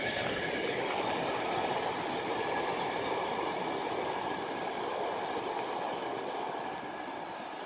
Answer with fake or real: real